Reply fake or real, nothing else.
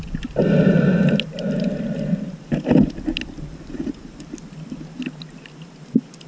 real